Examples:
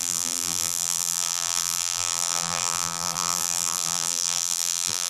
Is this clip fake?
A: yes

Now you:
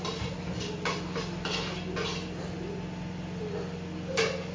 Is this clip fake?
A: no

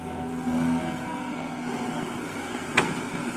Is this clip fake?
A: yes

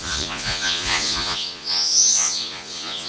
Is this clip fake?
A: yes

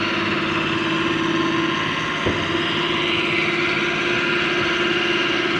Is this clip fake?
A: no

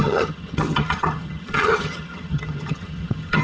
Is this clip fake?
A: yes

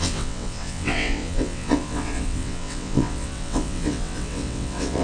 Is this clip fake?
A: yes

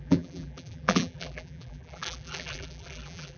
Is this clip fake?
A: yes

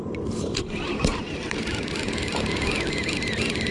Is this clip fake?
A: yes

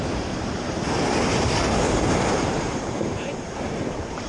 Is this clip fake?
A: yes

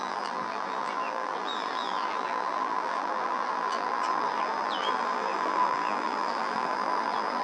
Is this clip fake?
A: yes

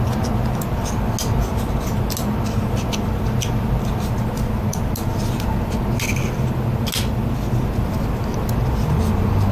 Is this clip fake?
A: no